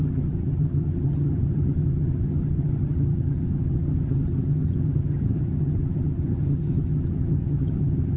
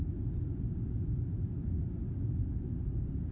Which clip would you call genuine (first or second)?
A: second